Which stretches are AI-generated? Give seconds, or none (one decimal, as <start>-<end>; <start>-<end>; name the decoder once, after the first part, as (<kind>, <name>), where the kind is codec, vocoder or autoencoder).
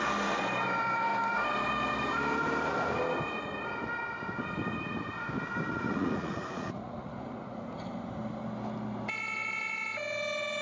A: 5.7-7.1 (vocoder, Vocos)